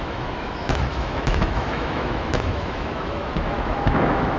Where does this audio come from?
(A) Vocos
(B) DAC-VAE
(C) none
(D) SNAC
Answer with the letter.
B